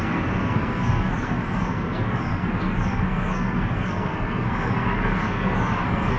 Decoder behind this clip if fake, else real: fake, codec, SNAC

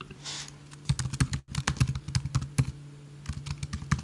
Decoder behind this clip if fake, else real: real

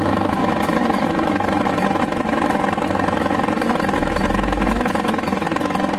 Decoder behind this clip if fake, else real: fake, autoencoder, DAC-VAE